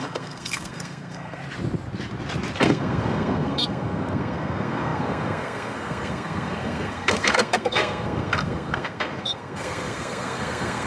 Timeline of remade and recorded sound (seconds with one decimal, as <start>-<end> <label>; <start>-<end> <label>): 0.0-1.4 remade; 1.4-2.6 recorded; 2.6-10.9 remade